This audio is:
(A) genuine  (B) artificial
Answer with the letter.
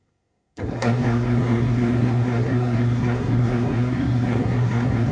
B